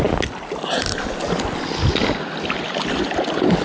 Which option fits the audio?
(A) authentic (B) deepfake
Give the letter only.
A